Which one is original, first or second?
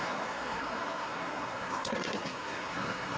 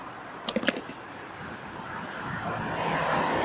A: second